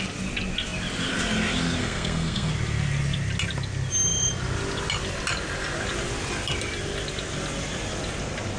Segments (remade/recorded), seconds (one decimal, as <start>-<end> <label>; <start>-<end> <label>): 0.0-1.8 recorded; 1.8-2.5 remade; 2.5-8.6 recorded